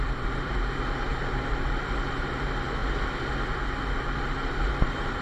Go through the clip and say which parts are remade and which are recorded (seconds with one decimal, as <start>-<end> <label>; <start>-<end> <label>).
0.0-2.8 remade; 2.8-4.1 recorded; 4.1-5.2 remade